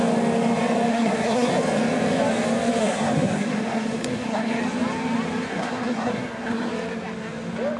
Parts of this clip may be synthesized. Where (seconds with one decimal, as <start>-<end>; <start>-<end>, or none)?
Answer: 0.9-1.5; 2.8-4.6; 5.5-6.7